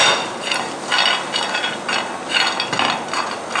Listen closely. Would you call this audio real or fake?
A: real